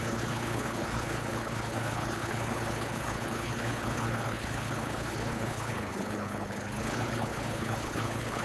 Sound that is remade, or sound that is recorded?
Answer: remade